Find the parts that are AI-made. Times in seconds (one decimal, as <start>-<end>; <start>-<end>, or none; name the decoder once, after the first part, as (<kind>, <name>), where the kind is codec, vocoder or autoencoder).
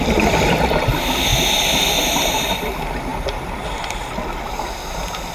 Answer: none